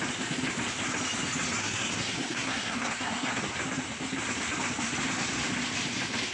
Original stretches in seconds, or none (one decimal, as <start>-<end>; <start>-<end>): 0.0-1.6; 3.3-6.3